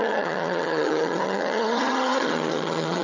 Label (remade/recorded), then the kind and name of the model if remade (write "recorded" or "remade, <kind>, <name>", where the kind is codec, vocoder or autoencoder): remade, vocoder, HiFi-GAN